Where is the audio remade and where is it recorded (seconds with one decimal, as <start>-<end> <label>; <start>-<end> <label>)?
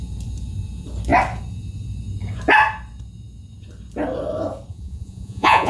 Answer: 0.0-4.7 recorded; 4.7-5.7 remade